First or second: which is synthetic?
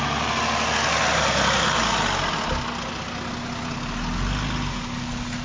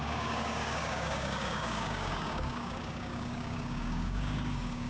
second